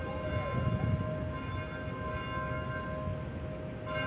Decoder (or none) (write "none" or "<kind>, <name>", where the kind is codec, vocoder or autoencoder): none